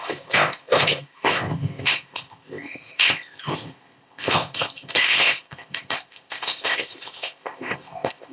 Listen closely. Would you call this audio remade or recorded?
remade